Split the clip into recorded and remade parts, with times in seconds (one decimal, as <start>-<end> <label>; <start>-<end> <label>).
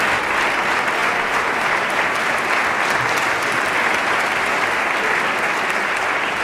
0.0-6.4 recorded